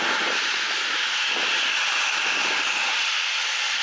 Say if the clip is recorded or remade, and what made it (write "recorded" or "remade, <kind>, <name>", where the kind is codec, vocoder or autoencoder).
recorded